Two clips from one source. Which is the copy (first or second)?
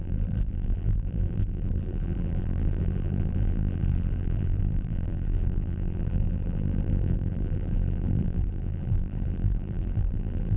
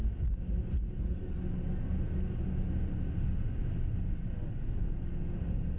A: first